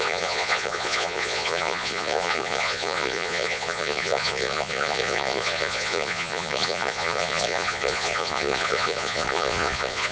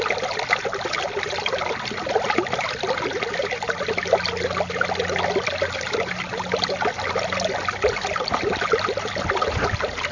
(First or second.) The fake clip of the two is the first